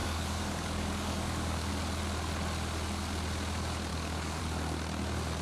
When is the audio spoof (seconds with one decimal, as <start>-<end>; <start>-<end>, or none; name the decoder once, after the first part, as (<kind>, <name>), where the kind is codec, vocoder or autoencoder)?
0.0-1.7 (codec, DAC); 3.9-4.4